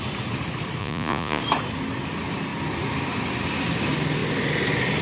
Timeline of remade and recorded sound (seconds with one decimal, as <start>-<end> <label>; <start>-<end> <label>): 0.0-0.8 recorded; 0.8-1.4 remade; 1.4-5.0 recorded